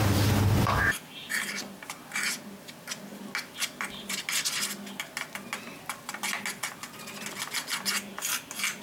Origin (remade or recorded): recorded